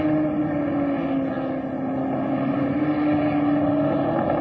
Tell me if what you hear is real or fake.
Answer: real